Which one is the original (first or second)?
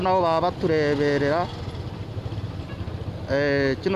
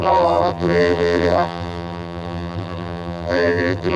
first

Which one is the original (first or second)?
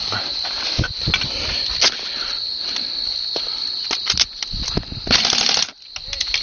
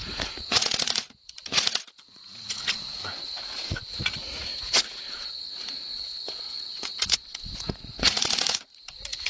first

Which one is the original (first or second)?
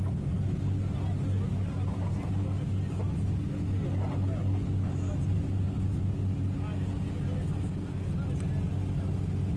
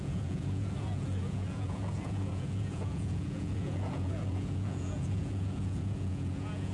first